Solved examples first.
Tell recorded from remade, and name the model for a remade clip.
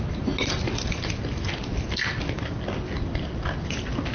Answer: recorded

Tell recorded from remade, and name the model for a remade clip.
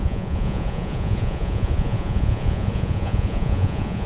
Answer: remade, vocoder, Vocos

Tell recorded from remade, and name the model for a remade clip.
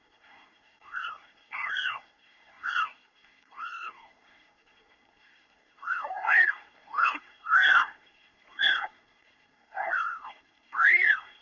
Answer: remade, codec, SNAC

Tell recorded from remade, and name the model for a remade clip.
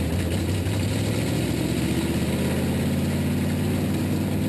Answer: recorded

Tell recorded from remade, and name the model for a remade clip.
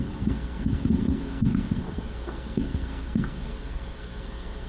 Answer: remade, codec, SNAC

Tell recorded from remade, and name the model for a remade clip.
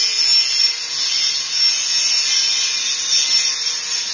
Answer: recorded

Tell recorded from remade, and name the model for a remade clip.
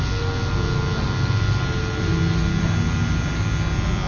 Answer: recorded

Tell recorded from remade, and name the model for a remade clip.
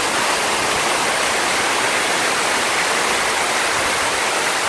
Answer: recorded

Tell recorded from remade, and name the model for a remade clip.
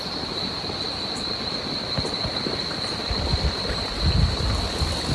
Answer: recorded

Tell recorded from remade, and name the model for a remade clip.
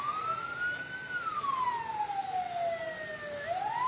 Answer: recorded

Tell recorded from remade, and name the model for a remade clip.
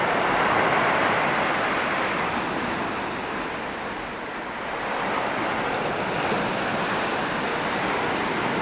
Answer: recorded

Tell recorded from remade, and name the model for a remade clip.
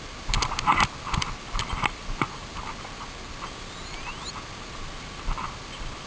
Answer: recorded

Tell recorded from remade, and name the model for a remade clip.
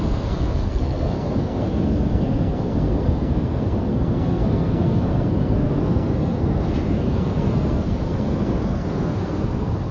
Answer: remade, codec, SNAC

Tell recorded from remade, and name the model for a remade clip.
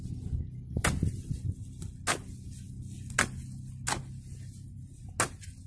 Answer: recorded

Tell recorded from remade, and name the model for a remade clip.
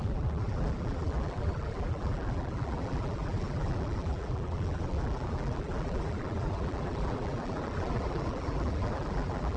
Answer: remade, vocoder, BigVGAN v2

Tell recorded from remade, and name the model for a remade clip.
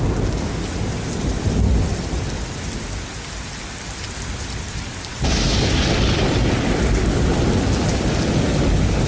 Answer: recorded